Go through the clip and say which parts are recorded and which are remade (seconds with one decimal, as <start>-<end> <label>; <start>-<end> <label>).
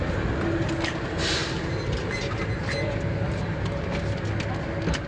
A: 0.0-5.1 recorded